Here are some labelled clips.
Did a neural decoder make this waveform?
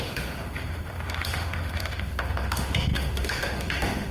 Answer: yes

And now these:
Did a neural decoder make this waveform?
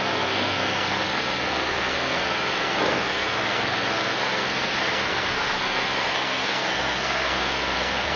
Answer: yes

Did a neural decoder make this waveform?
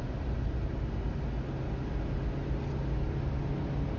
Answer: no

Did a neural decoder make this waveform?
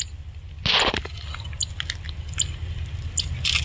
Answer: no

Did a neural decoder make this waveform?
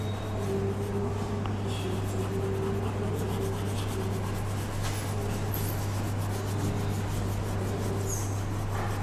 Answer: no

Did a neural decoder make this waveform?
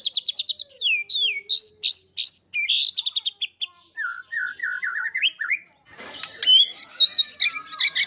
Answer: no